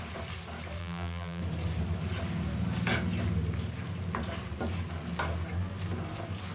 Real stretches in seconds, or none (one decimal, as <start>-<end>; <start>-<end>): 0.0-0.8; 1.4-6.5